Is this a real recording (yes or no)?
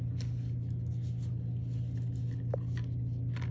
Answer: yes